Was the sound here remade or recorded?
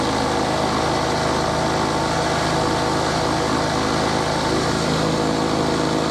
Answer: recorded